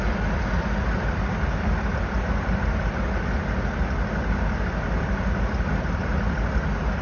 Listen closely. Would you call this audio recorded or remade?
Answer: recorded